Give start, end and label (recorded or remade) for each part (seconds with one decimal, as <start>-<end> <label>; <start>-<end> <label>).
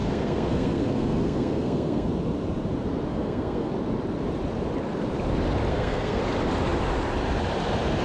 0.0-2.1 remade; 2.1-3.1 recorded; 3.1-3.7 remade; 3.7-5.7 recorded; 5.7-6.2 remade; 6.2-8.0 recorded